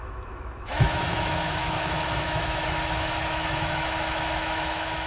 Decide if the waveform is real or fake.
fake